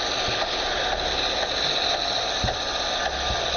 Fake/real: real